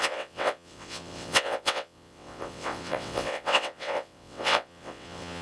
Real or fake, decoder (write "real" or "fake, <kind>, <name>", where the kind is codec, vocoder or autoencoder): fake, vocoder, WaveNeXt